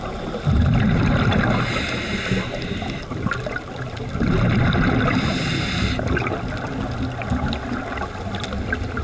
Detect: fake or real real